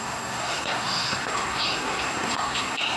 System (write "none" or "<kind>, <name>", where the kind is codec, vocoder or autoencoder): codec, SNAC